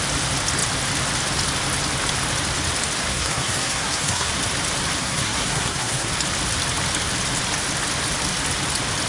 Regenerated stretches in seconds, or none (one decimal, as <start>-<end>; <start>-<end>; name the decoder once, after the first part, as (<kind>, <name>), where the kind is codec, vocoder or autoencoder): 3.1-4.3 (codec, SNAC); 5.0-6.1